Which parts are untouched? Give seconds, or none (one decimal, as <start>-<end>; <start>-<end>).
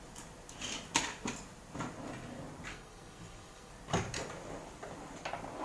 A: 0.0-2.7; 3.7-5.6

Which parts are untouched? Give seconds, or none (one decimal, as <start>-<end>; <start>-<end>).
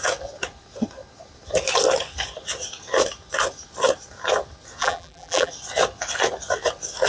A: 0.0-4.8; 5.5-7.1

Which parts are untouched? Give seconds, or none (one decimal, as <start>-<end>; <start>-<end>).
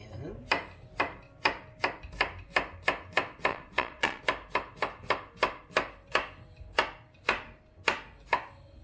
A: 0.0-3.5; 4.2-8.8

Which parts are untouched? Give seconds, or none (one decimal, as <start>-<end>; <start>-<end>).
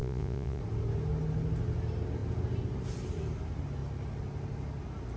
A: 0.6-5.2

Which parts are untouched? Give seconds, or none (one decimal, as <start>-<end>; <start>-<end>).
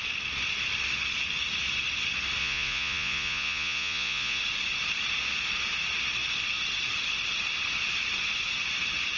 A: 0.0-2.4; 4.4-9.2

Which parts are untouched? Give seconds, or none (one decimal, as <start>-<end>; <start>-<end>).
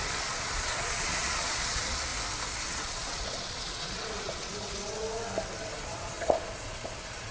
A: 2.1-2.7; 5.0-5.6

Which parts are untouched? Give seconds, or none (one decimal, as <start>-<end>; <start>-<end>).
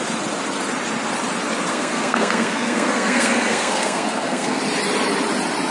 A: 0.0-1.7; 4.6-5.7